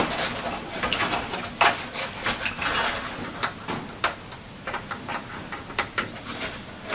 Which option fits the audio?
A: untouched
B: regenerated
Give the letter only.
A